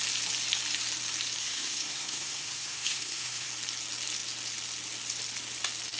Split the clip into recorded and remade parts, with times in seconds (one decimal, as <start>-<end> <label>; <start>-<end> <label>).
0.0-1.4 recorded; 1.4-3.5 remade; 3.5-6.0 recorded